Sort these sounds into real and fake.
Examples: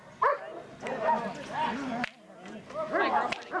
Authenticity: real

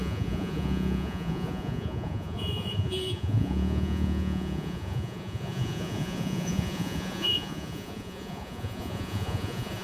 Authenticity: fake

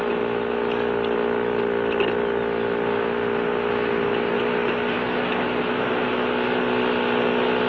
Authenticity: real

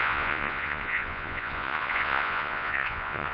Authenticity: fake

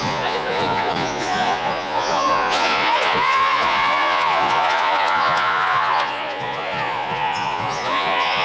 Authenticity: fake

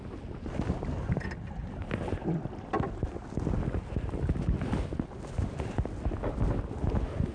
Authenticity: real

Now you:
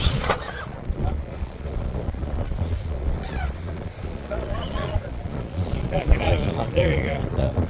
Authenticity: fake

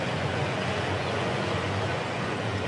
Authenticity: fake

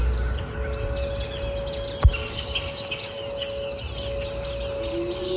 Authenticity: real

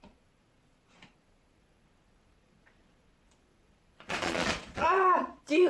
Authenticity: fake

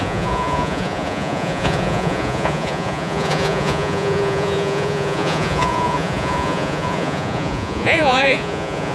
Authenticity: fake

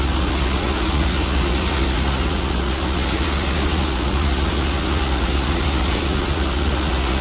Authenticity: fake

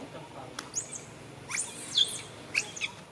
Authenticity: real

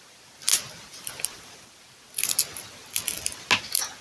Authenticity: real